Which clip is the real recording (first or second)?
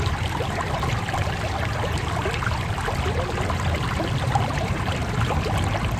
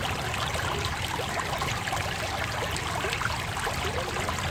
second